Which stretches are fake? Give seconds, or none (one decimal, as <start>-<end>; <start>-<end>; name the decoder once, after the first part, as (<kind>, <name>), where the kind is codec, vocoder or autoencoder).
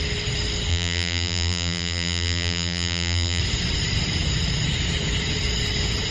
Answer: 0.7-3.4 (vocoder, BigVGAN v2)